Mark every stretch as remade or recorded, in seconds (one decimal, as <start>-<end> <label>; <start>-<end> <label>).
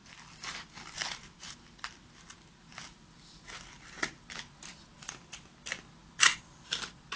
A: 0.0-7.2 recorded